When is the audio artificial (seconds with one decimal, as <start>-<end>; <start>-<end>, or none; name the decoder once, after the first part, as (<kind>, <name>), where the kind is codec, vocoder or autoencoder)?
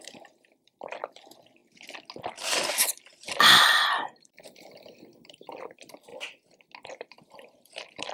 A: 0.0-1.6 (vocoder, BigVGAN v2); 2.7-6.1; 6.9-8.1